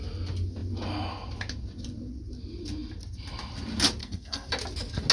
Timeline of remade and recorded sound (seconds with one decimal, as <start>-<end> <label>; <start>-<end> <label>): 0.0-4.0 recorded; 4.0-4.5 remade; 4.5-5.1 recorded